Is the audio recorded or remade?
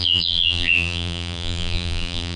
remade